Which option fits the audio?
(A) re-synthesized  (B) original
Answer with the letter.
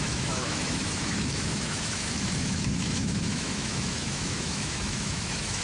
A